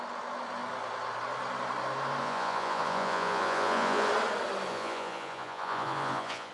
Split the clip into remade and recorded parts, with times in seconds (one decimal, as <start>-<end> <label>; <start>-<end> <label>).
0.0-2.2 recorded; 2.2-4.1 remade; 4.1-4.7 recorded; 4.7-6.5 remade